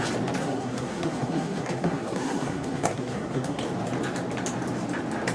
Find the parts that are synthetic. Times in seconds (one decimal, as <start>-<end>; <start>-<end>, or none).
0.4-3.6